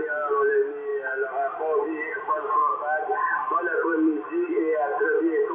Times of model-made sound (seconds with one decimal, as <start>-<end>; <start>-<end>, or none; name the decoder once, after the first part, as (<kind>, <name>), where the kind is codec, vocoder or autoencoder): none